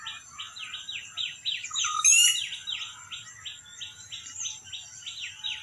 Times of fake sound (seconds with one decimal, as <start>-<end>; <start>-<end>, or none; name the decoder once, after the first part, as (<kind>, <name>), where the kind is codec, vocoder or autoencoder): none